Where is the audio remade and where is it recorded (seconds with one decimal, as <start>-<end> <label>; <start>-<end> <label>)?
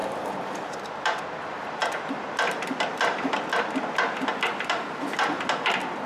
0.0-1.2 remade; 1.2-1.8 recorded; 1.8-3.7 remade; 3.7-4.3 recorded; 4.3-5.4 remade; 5.4-6.1 recorded